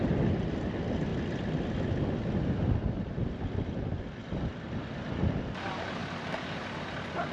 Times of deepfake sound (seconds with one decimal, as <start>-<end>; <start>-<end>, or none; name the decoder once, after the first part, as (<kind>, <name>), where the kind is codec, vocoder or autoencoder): 0.0-1.1 (vocoder, BigVGAN v2); 4.0-6.0; 6.6-7.3

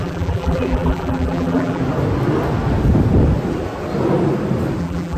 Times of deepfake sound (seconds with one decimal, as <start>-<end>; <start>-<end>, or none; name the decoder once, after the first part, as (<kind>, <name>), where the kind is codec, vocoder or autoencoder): 0.0-1.8 (vocoder, BigVGAN v2); 4.8-5.2

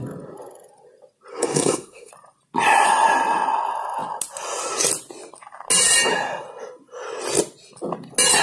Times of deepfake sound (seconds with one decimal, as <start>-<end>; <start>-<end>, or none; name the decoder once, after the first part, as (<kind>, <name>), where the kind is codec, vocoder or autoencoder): 1.3-2.1 (codec, SNAC)

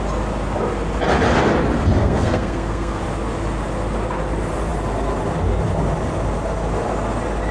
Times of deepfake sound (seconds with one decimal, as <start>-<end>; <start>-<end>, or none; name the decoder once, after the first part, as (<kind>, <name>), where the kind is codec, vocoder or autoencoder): 2.0-3.0 (codec, SNAC)

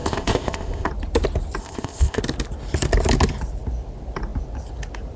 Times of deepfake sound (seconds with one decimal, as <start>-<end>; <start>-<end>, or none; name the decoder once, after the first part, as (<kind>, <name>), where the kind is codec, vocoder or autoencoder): 0.0-0.9 (codec, ZipCodec); 1.6-2.2